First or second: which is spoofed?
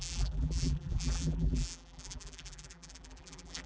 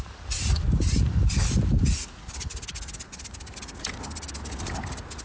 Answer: first